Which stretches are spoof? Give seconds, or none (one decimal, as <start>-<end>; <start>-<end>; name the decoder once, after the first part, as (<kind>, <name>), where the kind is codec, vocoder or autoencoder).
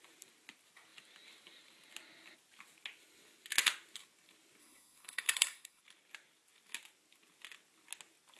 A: 4.6-5.8 (codec, SNAC)